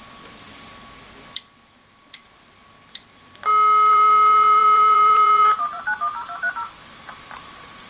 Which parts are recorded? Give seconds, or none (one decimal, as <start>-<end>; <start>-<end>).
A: 0.0-3.9; 6.5-7.9